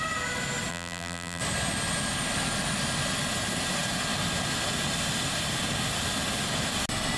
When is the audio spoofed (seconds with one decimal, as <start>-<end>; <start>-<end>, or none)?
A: 0.7-1.4